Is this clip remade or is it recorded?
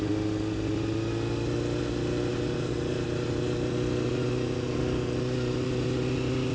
recorded